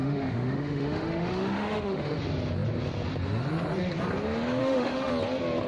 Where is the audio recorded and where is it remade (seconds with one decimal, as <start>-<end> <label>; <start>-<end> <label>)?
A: 0.0-2.2 remade; 2.2-4.6 recorded; 4.6-5.1 remade; 5.1-5.7 recorded